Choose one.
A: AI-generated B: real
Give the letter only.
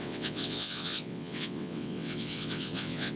A